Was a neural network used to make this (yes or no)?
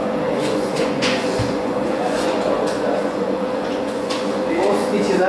yes